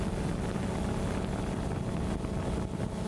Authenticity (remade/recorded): recorded